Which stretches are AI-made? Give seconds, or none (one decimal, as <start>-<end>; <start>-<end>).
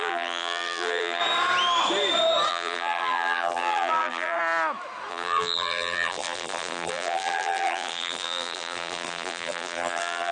0.0-1.2; 2.5-4.4; 5.1-10.3